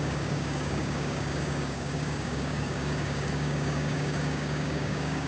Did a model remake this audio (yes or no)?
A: yes